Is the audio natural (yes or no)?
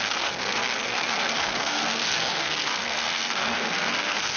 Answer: no